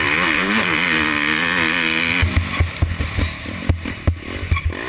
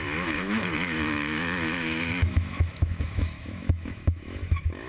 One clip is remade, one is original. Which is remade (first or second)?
second